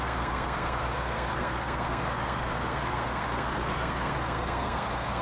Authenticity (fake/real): fake